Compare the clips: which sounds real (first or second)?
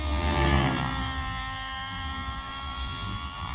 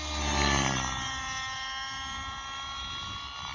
second